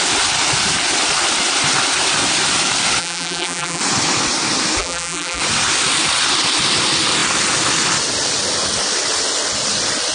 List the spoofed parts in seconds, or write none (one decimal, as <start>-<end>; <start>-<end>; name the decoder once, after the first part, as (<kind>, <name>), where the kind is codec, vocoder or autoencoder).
3.0-3.8 (vocoder, BigVGAN v2); 4.8-5.4